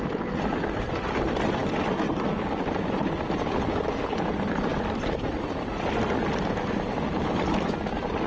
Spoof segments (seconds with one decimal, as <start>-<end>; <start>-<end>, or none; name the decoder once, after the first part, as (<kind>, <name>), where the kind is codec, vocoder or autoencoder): 0.0-1.6 (vocoder, BigVGAN v2); 2.1-8.3